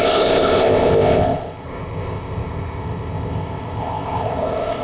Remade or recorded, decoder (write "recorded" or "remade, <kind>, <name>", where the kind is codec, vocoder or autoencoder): remade, codec, ZipCodec